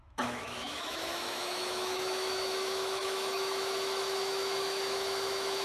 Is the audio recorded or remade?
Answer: remade